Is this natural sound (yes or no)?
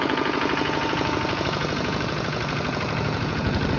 no